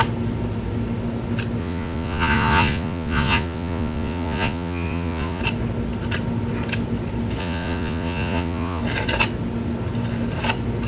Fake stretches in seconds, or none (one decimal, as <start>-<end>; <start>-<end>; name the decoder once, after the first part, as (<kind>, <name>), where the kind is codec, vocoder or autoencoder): 1.6-5.4 (vocoder, Vocos); 7.4-8.8